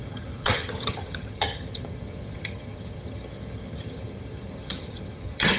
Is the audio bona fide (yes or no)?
no